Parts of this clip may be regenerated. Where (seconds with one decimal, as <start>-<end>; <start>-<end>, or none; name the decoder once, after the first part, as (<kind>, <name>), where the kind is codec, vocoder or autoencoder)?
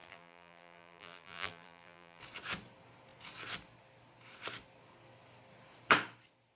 0.0-2.2 (vocoder, BigVGAN v2)